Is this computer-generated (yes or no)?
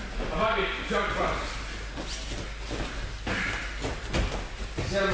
no